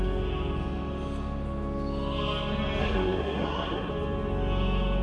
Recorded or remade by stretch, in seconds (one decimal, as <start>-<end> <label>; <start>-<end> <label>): 0.0-2.8 recorded; 2.8-3.9 remade; 3.9-5.0 recorded